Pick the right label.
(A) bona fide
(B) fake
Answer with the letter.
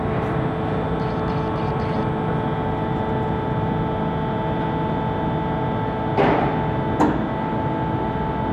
A